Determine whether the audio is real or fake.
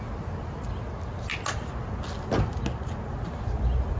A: real